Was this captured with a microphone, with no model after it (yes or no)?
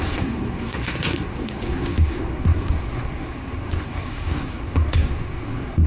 no